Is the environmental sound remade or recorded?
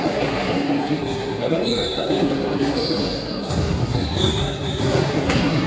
remade